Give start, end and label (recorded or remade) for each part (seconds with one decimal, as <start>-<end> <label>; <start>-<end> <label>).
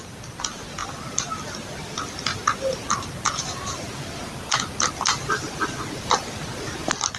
0.0-7.2 recorded